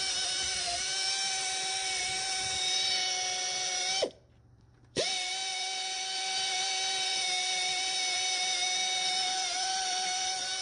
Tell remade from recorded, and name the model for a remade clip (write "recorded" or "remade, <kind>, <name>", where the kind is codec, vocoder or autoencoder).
remade, vocoder, BigVGAN v2